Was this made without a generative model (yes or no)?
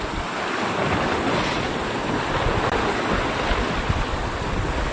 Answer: yes